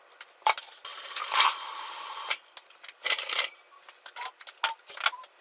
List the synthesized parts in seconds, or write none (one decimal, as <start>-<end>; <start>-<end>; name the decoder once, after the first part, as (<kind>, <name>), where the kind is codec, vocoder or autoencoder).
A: none